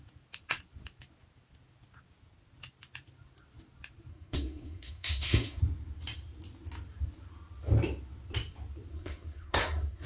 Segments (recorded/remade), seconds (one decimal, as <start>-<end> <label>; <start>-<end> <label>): 0.0-4.1 recorded; 4.1-5.6 remade; 5.6-8.9 recorded; 8.9-10.1 remade

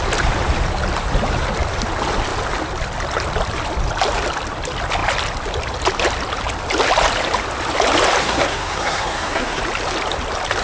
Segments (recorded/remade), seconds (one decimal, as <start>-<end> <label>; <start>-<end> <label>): 0.0-8.2 recorded; 8.2-9.6 remade; 9.6-10.6 recorded

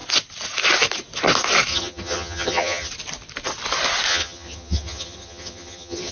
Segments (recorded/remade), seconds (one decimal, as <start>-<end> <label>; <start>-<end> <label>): 0.0-1.7 recorded; 1.7-2.9 remade; 2.9-4.1 recorded; 4.1-6.1 remade

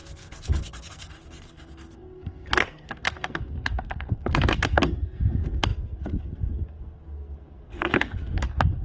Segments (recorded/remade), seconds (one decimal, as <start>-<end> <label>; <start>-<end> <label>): 0.0-8.8 remade

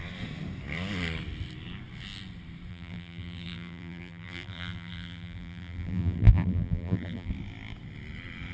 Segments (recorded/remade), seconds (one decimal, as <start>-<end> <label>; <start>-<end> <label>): 0.0-2.7 recorded; 2.7-7.3 remade; 7.3-8.5 recorded

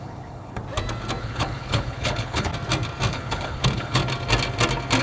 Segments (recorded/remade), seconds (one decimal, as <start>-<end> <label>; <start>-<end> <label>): 0.0-0.6 remade; 0.6-1.2 recorded; 1.2-2.5 remade; 2.5-3.1 recorded; 3.1-4.0 remade; 4.0-5.0 recorded

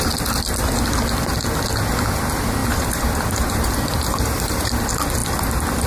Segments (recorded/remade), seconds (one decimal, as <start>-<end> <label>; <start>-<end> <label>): 0.0-2.6 recorded; 2.6-4.7 remade; 4.7-5.9 recorded

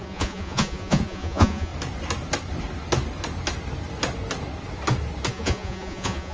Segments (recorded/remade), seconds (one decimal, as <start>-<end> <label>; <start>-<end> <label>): 0.0-1.7 remade; 1.7-5.3 recorded; 5.3-6.3 remade